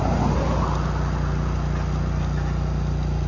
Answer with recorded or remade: recorded